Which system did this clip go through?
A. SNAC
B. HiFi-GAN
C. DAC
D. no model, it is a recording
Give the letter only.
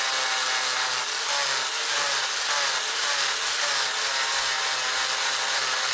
D